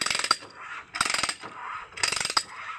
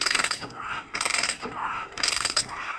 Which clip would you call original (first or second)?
first